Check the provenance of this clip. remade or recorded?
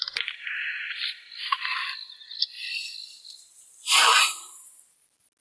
recorded